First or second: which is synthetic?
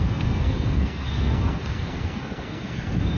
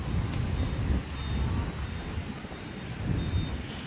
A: first